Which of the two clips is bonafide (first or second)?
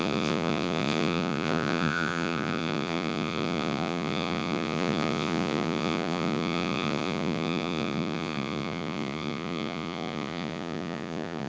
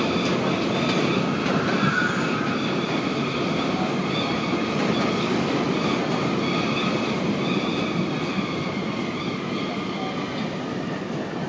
second